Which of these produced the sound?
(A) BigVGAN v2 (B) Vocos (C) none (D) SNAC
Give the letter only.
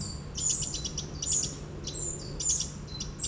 C